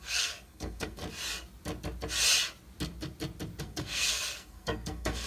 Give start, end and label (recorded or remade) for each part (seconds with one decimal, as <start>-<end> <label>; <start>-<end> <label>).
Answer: 0.0-1.0 remade; 1.0-3.6 recorded; 3.6-5.3 remade